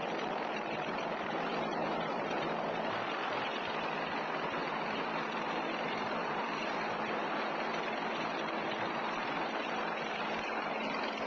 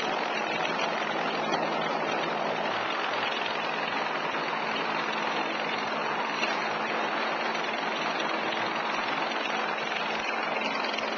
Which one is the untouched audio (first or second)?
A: second